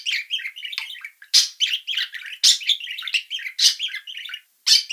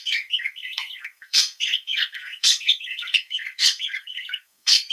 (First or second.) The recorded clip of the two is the first